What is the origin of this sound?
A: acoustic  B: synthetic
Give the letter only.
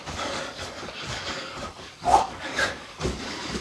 B